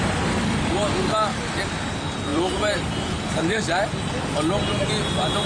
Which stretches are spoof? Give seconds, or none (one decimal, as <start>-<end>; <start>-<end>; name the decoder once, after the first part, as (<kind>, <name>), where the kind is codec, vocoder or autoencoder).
none